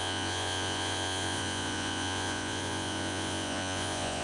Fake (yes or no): yes